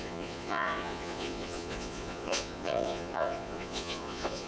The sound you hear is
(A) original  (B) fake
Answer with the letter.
B